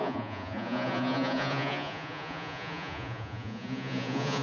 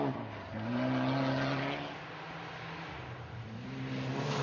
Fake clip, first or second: first